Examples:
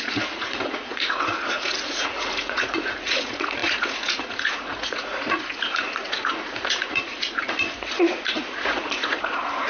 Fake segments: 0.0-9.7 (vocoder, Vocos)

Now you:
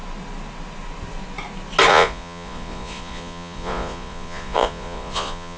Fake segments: 1.9-5.6 (vocoder, Vocos)

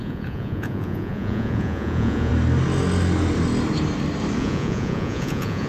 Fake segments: 0.0-2.3 (vocoder, Vocos); 4.4-5.7